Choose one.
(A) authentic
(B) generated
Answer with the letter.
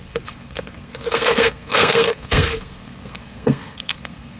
B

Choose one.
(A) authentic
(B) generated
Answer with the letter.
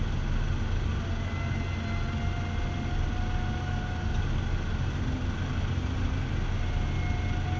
A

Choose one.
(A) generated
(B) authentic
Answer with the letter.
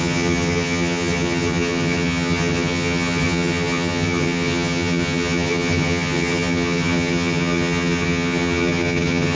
A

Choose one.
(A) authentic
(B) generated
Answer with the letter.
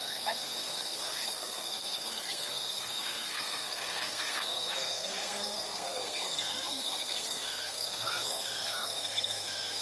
B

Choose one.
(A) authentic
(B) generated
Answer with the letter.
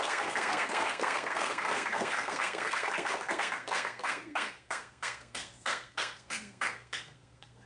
B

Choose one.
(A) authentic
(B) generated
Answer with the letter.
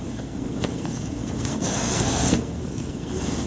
B